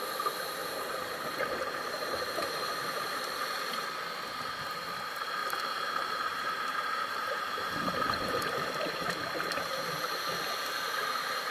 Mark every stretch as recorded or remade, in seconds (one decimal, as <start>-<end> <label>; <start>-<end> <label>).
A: 0.0-0.6 recorded; 0.6-3.2 remade; 3.2-5.4 recorded; 5.4-9.9 remade; 9.9-11.5 recorded

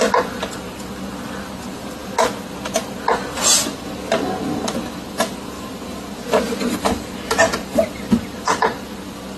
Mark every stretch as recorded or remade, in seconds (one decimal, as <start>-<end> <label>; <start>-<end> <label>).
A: 0.0-9.4 recorded

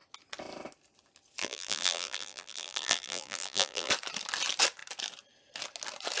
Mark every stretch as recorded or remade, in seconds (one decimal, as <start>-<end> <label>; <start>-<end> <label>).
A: 0.0-1.4 recorded; 1.4-3.9 remade; 3.9-6.2 recorded

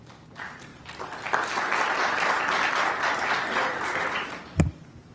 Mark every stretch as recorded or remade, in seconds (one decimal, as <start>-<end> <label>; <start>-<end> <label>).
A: 0.0-5.1 recorded

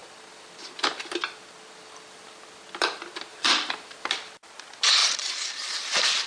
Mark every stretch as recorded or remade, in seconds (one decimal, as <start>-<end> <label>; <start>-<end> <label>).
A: 0.0-3.3 recorded; 3.3-4.1 remade; 4.1-5.0 recorded; 5.0-5.8 remade; 5.8-6.3 recorded

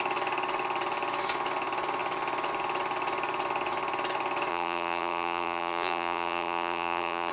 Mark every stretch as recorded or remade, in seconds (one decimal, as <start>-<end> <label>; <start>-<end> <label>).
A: 0.0-4.5 recorded; 4.5-7.3 remade